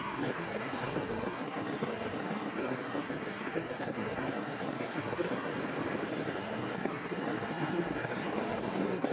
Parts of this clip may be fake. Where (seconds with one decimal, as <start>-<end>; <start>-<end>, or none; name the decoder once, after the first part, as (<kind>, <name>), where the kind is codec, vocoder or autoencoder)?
0.0-5.5 (codec, SNAC); 6.1-9.1